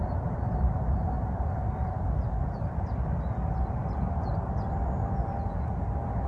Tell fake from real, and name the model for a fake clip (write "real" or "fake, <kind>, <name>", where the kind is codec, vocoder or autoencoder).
real